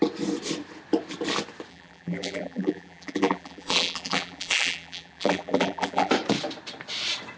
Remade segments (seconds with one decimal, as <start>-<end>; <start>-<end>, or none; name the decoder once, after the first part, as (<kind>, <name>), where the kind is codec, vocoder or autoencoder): 1.7-6.1 (vocoder, BigVGAN v2)